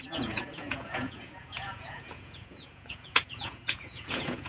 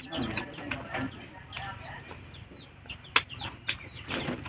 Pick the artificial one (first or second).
first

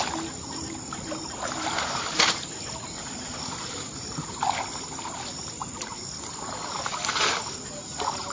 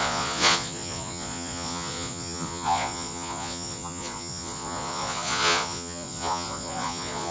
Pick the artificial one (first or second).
second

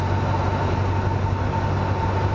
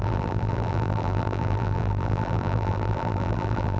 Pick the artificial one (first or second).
second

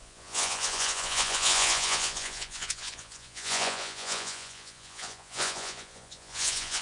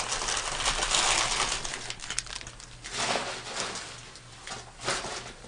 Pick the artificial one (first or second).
first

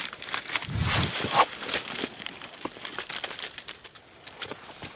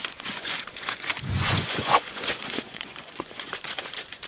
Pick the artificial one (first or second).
second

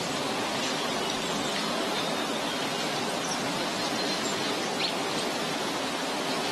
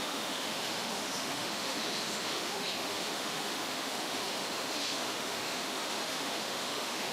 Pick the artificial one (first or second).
second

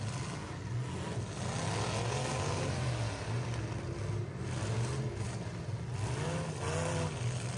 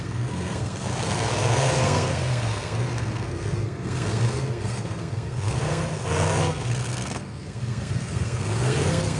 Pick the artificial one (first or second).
second